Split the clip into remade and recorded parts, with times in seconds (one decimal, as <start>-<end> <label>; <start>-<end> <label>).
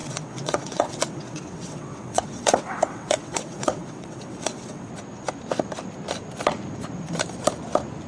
0.0-4.9 remade; 4.9-8.1 recorded